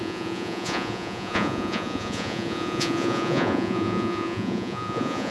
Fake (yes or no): yes